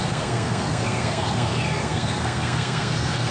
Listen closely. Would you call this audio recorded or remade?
remade